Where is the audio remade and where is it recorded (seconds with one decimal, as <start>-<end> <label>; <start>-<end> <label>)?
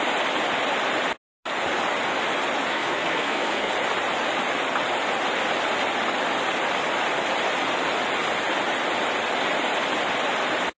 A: 0.0-2.7 recorded; 2.7-3.7 remade; 3.7-10.8 recorded